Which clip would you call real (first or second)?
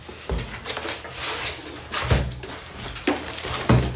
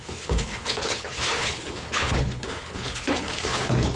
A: first